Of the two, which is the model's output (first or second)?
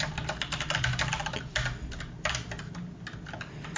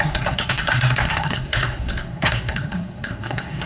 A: second